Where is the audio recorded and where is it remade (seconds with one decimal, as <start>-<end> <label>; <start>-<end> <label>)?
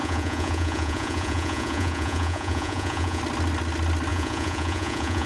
0.0-3.2 remade; 3.2-4.1 recorded; 4.1-5.3 remade